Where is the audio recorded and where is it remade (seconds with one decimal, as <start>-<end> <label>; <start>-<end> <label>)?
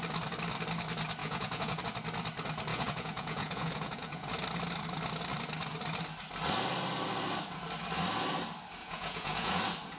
0.0-1.2 recorded; 1.2-1.8 remade; 1.8-2.7 recorded; 2.7-4.3 remade; 4.3-8.8 recorded; 8.8-9.6 remade; 9.6-10.0 recorded